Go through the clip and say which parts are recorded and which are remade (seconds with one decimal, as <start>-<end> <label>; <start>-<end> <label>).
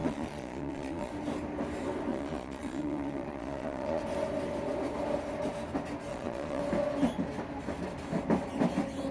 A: 0.0-1.1 remade; 1.1-2.1 recorded; 2.1-4.0 remade; 4.0-6.1 recorded; 6.1-6.6 remade; 6.6-9.1 recorded